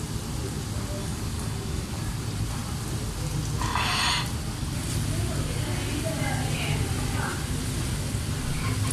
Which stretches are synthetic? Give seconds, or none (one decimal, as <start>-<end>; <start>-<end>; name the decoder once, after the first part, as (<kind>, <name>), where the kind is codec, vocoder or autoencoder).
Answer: 1.0-2.0 (codec, DAC)